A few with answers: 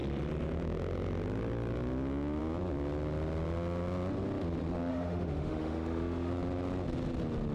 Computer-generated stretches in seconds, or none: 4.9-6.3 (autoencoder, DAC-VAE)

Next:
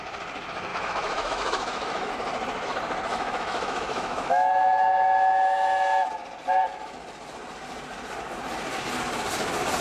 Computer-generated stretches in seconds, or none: 0.7-2.1 (autoencoder, DAC-VAE); 3.1-6.1

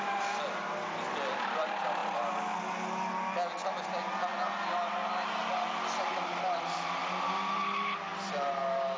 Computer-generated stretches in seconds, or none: none